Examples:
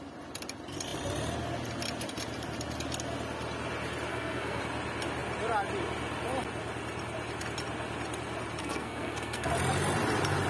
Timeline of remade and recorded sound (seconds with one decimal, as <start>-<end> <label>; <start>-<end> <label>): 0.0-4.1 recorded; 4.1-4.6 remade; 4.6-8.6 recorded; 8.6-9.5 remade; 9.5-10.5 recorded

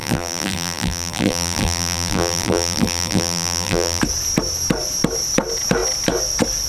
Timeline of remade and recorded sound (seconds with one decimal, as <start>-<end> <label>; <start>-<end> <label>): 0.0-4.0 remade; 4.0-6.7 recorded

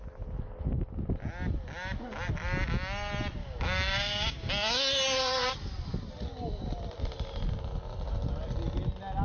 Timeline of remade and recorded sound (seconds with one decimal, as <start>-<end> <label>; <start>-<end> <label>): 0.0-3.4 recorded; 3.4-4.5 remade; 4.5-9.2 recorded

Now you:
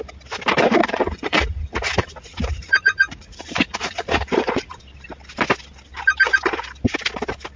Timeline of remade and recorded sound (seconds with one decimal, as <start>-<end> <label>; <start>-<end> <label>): 0.0-0.8 recorded; 0.8-4.8 remade; 4.8-7.6 recorded

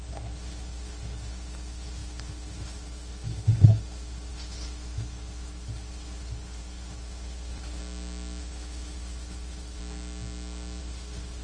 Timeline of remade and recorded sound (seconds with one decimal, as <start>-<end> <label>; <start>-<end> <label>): 0.0-7.8 remade; 7.8-8.4 recorded; 8.4-9.8 remade; 9.8-10.8 recorded; 10.8-11.4 remade